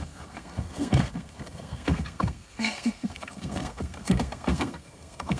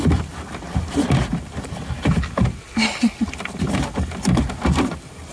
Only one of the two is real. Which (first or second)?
second